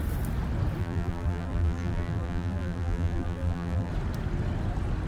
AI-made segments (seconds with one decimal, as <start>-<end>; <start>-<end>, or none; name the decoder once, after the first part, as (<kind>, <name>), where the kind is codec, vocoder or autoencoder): 0.8-3.9 (vocoder, BigVGAN v2)